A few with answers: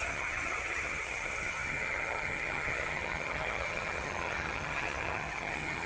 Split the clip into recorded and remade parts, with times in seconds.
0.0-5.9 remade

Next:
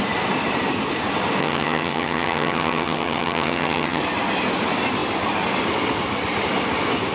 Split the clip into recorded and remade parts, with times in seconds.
0.0-1.4 recorded; 1.4-4.0 remade; 4.0-7.1 recorded

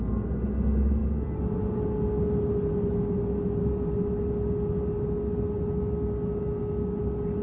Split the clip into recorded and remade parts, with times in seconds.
0.0-7.4 recorded

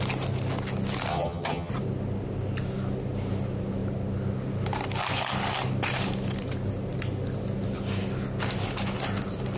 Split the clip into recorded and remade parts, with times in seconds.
0.0-1.1 recorded; 1.1-1.7 remade; 1.7-9.6 recorded

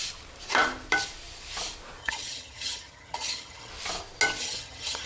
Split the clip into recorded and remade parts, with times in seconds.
0.0-2.0 recorded; 2.0-3.7 remade; 3.7-4.4 recorded; 4.4-5.1 remade

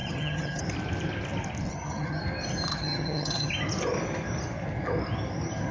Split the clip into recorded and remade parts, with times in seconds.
0.0-0.6 remade; 0.6-1.7 recorded; 1.7-2.2 remade; 2.2-2.7 recorded; 2.7-3.5 remade; 3.5-5.7 recorded

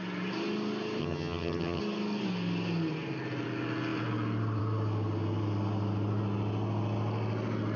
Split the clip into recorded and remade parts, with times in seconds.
0.0-1.0 recorded; 1.0-1.8 remade; 1.8-7.8 recorded

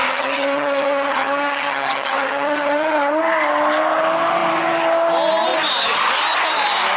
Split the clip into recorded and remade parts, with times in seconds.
0.0-3.2 remade; 3.2-7.0 recorded